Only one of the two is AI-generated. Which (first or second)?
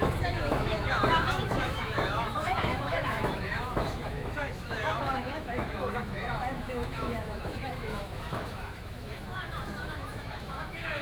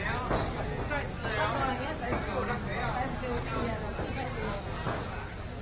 first